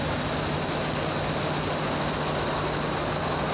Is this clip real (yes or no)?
yes